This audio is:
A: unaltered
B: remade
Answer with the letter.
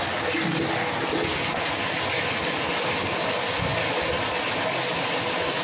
A